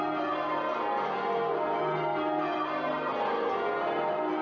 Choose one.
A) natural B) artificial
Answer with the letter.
A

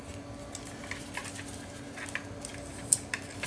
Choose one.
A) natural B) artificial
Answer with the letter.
A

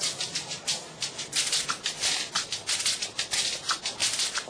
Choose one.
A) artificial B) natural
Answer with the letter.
B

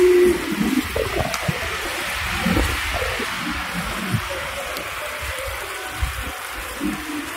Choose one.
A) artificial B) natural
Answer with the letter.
B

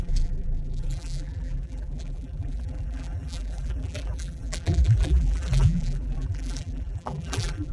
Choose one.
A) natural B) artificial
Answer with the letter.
B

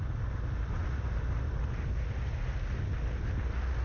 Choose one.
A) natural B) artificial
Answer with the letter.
A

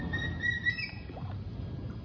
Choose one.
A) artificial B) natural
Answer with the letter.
B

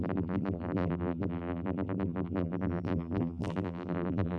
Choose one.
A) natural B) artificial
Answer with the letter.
B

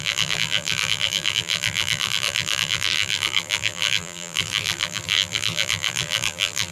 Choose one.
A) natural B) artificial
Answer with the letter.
B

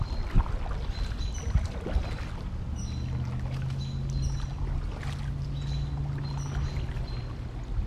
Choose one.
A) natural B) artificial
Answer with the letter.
A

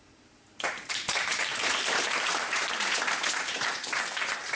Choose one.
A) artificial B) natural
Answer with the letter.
A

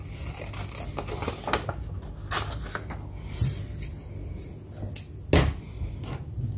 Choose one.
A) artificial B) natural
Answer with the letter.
B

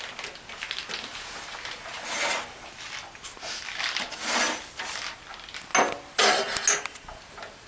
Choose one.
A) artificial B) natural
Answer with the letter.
B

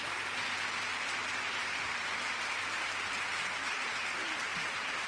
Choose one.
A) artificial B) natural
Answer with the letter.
A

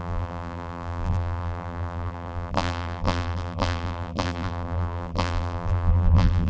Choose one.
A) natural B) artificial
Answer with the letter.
B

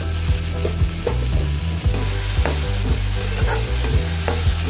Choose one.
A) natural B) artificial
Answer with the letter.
A